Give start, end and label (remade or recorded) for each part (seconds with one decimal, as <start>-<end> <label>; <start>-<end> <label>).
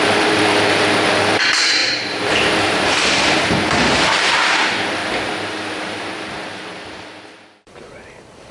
0.0-5.0 remade; 5.0-6.0 recorded; 6.0-8.5 remade